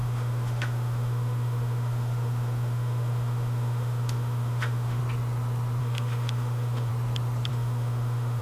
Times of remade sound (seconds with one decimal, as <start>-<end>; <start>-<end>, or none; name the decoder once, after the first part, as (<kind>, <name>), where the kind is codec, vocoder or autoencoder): 0.0-5.0 (autoencoder, DAC-VAE); 5.8-6.9; 7.5-8.4